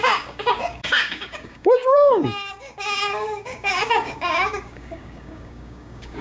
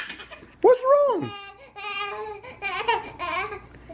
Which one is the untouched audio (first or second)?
second